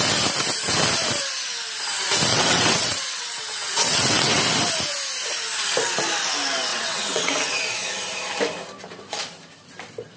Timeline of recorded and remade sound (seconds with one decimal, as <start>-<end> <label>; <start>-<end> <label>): 0.0-2.3 recorded; 2.3-4.4 remade; 4.4-6.7 recorded; 6.7-7.3 remade; 7.3-10.2 recorded